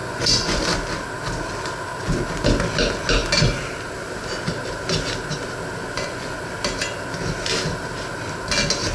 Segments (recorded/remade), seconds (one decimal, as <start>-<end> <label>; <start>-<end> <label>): 0.0-0.6 remade; 0.6-5.8 recorded; 5.8-6.4 remade; 6.4-8.9 recorded